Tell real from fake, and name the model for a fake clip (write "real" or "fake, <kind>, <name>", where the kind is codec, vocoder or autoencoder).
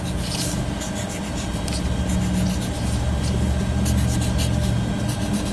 real